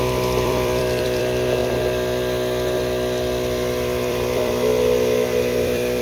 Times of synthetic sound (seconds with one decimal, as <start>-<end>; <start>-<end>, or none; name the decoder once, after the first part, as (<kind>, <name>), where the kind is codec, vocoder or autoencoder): 0.0-1.6 (vocoder, BigVGAN v2); 4.1-4.7; 5.6-6.0